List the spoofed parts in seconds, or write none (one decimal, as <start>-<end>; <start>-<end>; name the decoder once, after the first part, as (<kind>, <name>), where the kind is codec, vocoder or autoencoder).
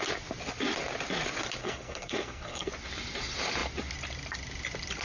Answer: 1.6-2.7 (codec, SNAC)